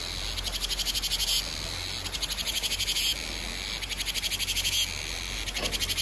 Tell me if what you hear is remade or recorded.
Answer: recorded